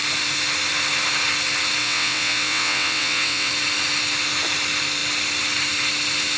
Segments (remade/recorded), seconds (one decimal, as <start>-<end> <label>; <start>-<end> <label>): 0.0-1.8 recorded; 1.8-3.5 remade; 3.5-6.4 recorded